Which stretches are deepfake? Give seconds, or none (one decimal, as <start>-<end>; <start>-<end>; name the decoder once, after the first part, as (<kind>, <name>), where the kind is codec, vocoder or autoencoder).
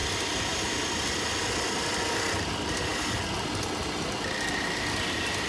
none